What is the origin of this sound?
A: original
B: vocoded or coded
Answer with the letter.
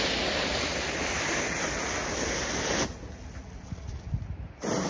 A